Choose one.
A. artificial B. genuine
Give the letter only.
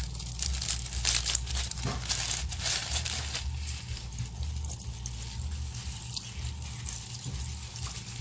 B